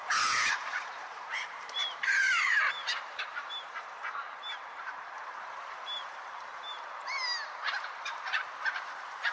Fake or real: fake